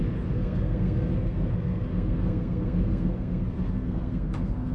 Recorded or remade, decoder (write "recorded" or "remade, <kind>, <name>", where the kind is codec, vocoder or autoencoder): remade, codec, SNAC